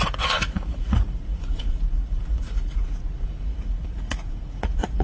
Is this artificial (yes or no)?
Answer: yes